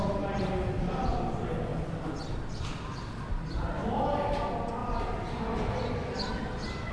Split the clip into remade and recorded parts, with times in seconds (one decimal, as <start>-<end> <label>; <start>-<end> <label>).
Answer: 0.0-6.9 recorded